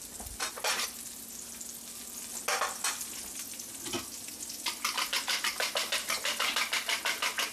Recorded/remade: recorded